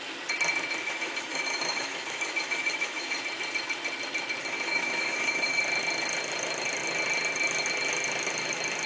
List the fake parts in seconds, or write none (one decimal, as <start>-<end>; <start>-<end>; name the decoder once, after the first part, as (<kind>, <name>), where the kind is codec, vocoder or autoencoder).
0.8-3.2 (autoencoder, DAC-VAE); 4.4-5.6